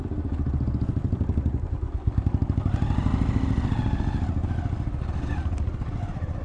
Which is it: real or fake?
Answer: real